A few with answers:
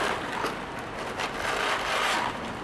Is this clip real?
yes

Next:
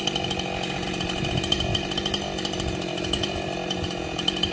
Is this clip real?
yes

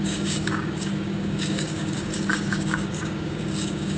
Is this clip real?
no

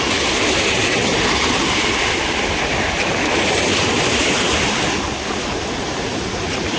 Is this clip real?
yes